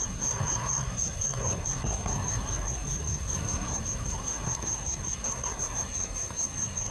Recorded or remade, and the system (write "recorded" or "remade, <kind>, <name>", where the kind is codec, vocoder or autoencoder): remade, codec, SNAC